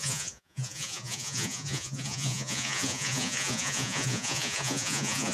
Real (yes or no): no